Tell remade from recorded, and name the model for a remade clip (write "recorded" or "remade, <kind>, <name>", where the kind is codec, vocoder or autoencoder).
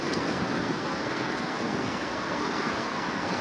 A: remade, codec, SNAC